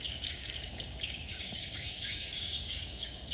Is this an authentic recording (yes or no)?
no